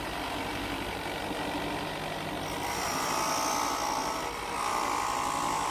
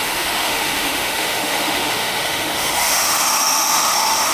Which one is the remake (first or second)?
second